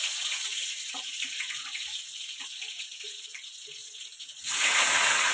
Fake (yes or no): yes